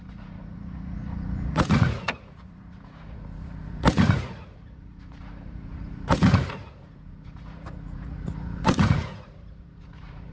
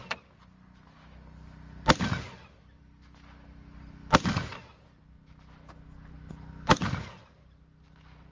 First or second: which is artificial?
first